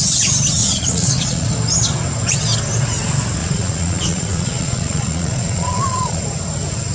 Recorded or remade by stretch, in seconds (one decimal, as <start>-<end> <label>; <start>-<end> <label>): 0.0-0.6 recorded; 0.6-1.5 remade; 1.5-3.4 recorded; 3.4-6.2 remade; 6.2-6.9 recorded